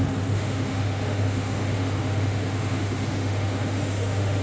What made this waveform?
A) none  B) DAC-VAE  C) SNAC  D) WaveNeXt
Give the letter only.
B